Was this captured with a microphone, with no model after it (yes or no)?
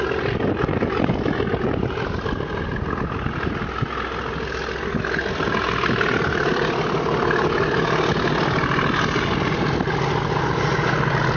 yes